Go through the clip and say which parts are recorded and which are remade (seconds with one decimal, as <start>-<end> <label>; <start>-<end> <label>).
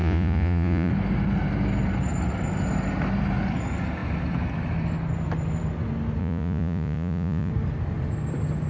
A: 0.0-0.9 remade; 0.9-6.2 recorded; 6.2-7.5 remade; 7.5-8.7 recorded